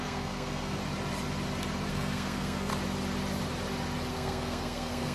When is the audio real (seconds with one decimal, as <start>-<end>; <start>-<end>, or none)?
0.8-1.9; 2.7-4.1